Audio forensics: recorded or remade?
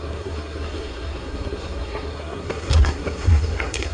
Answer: remade